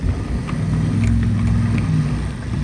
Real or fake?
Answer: real